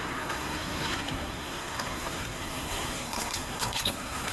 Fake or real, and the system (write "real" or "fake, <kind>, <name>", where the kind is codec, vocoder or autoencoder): fake, codec, SNAC